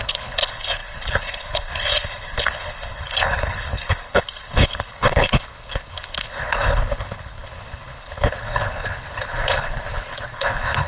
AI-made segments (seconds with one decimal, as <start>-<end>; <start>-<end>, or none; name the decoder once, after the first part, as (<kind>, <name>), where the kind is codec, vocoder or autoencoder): 0.0-10.9 (codec, HILCodec)